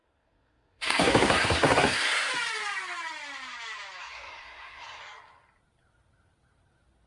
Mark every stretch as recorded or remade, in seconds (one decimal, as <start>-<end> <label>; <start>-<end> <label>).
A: 0.0-2.3 remade; 2.3-4.0 recorded; 4.0-5.0 remade; 5.0-7.1 recorded

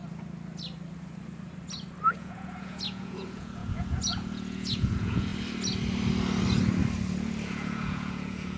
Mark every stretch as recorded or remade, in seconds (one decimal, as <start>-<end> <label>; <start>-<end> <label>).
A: 0.0-2.1 recorded; 2.1-5.3 remade; 5.3-7.5 recorded; 7.5-8.6 remade

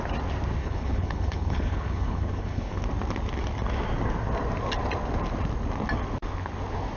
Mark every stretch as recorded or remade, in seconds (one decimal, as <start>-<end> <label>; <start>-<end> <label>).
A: 0.0-0.6 recorded; 0.6-2.8 remade; 2.8-7.0 recorded

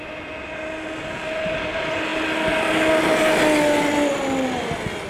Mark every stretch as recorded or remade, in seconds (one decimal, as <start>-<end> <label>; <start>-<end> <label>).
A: 0.0-5.1 recorded